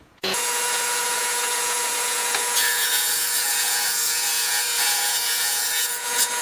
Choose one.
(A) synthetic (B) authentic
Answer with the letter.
A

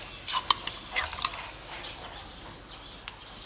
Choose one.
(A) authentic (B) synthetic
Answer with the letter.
A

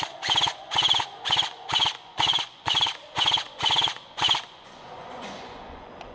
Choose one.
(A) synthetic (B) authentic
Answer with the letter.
A